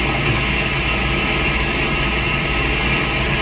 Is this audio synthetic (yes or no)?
no